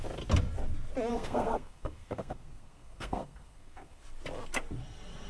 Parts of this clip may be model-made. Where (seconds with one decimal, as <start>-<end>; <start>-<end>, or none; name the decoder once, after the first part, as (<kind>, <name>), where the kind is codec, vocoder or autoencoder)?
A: 1.1-4.0 (codec, SNAC)